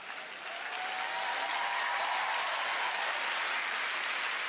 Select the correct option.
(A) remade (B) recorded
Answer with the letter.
B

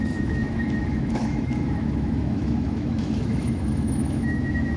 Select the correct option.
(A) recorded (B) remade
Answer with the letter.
B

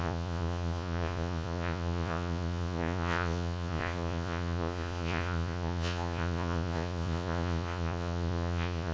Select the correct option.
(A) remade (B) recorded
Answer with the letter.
A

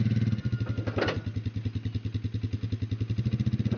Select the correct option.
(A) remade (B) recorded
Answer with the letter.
B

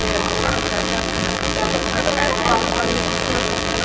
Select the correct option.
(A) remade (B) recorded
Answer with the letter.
A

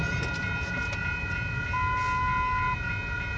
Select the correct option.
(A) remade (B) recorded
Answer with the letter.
B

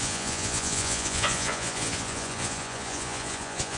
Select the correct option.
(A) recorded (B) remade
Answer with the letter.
B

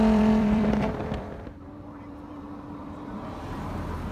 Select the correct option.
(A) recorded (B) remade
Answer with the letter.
B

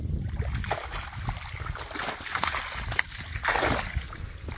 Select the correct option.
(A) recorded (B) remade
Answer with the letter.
A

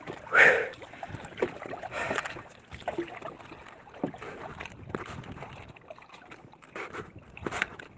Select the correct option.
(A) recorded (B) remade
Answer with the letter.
A